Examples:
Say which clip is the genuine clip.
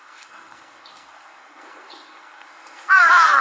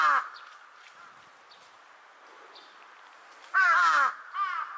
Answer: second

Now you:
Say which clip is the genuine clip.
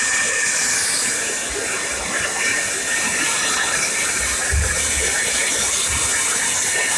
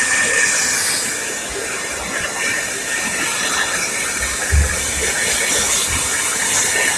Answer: second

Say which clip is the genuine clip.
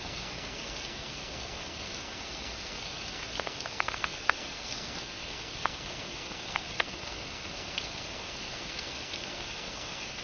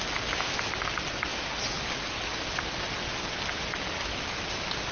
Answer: second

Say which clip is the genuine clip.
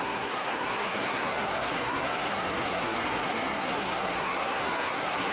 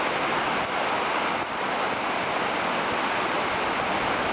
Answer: second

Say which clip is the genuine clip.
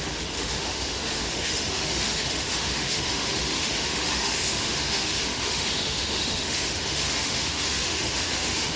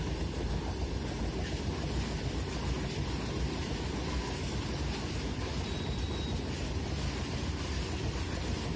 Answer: second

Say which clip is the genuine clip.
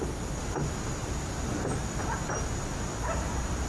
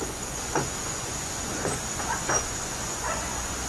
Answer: first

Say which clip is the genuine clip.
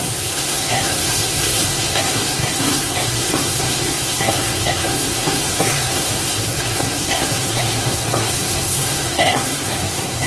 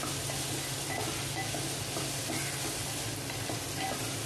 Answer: second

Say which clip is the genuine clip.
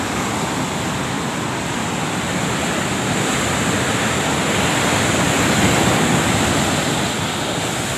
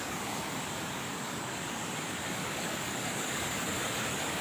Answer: first